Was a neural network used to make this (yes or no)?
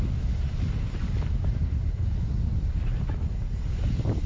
no